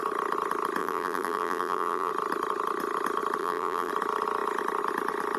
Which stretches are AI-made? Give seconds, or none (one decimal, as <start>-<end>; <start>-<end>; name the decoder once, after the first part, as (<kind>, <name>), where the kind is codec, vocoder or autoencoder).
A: 0.8-2.1 (vocoder, BigVGAN v2); 3.4-3.9